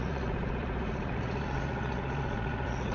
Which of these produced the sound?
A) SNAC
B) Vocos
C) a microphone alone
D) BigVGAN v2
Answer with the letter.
B